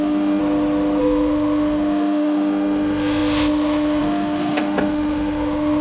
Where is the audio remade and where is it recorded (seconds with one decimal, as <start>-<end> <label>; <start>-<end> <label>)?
0.0-0.4 remade; 0.4-1.0 recorded; 1.0-5.8 remade